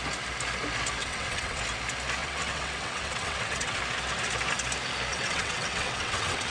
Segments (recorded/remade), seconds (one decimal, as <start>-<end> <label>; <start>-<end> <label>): 0.0-1.0 recorded; 1.0-1.6 remade; 1.6-2.2 recorded; 2.2-3.8 remade; 3.8-5.1 recorded; 5.1-6.5 remade